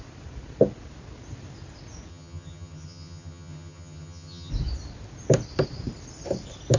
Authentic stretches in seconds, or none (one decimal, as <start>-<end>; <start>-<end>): 0.0-2.1; 4.5-6.8